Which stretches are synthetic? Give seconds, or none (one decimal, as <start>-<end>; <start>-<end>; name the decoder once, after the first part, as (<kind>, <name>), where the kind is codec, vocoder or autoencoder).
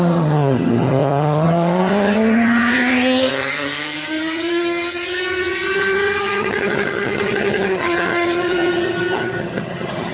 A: 0.0-10.1 (vocoder, HiFi-GAN)